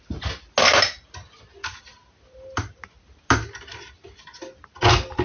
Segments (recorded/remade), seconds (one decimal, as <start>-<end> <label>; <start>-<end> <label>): 0.0-5.2 recorded